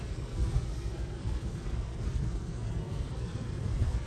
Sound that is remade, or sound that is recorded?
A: remade